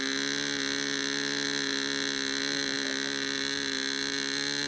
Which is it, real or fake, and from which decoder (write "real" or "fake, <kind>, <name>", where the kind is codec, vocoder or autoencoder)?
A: real